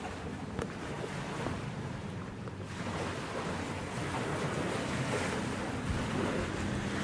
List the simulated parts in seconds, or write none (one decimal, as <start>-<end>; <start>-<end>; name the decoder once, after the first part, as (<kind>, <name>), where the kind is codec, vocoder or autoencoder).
none